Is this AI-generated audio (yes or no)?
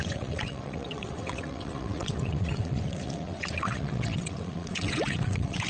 yes